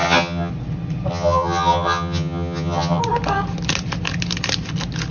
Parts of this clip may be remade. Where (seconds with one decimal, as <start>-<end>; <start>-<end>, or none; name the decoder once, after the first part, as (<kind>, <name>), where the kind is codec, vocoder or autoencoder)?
0.0-0.5 (vocoder, HiFi-GAN); 1.1-3.0